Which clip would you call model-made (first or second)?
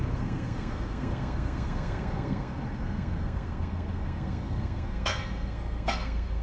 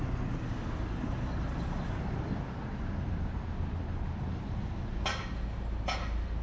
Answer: first